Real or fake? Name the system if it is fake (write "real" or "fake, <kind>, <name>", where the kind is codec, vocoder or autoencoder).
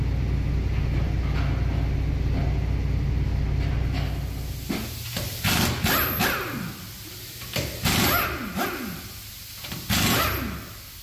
real